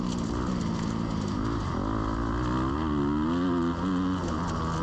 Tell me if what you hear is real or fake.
real